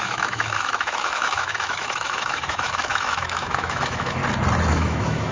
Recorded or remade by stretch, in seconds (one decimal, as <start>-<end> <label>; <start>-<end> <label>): 0.0-4.2 remade; 4.2-4.7 recorded; 4.7-5.3 remade